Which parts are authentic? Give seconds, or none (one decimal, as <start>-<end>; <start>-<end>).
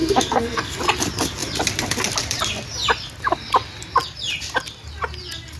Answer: 0.8-5.6